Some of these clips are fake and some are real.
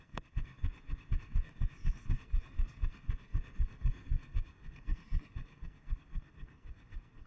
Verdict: fake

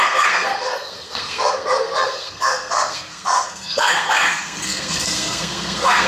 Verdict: fake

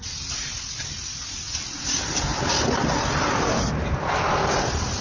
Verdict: real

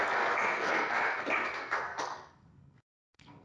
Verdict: fake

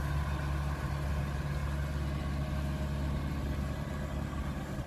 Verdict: real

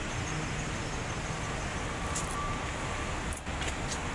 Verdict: real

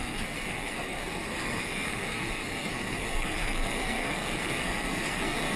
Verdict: fake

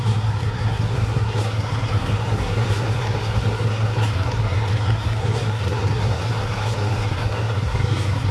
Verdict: fake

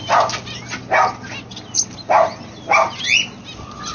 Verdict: real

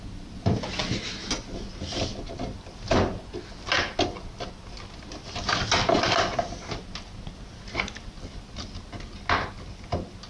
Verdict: real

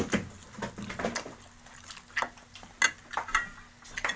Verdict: real